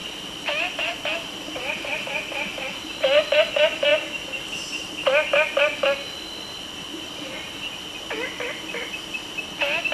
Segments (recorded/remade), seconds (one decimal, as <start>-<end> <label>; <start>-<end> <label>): 0.0-2.0 remade; 2.0-9.9 recorded